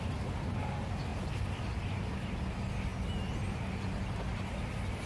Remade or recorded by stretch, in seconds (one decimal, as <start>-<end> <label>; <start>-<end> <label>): 0.0-5.1 recorded